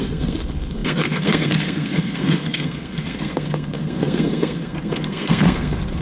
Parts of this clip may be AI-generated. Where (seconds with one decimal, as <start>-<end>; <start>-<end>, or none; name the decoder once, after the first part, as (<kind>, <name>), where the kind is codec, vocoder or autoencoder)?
0.0-6.0 (codec, SNAC)